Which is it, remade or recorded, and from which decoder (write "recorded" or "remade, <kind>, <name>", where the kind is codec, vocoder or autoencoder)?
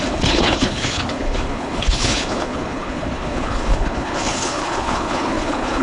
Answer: remade, codec, HILCodec